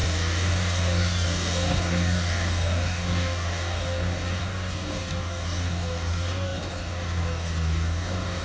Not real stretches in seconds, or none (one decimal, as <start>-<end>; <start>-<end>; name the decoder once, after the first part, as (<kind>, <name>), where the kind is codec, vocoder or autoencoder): 0.0-8.4 (codec, DAC)

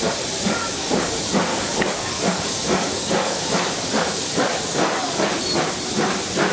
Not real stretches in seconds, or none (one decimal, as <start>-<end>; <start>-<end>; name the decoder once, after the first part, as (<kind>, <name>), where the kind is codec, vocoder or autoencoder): 0.6-1.1 (codec, DAC); 1.5-5.4

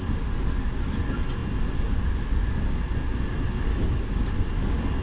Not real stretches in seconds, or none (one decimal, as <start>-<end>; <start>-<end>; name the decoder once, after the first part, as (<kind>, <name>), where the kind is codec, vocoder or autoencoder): 3.7-4.3 (codec, DAC)